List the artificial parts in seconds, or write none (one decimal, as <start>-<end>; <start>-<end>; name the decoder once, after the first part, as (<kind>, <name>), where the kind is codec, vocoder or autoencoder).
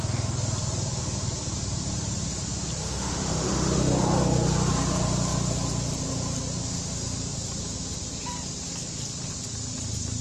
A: 2.8-3.8 (autoencoder, DAC-VAE)